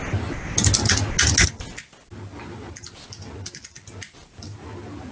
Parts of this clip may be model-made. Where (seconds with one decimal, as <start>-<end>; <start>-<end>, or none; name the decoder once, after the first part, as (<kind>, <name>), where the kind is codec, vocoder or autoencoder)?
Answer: none